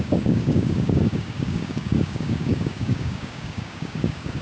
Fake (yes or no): yes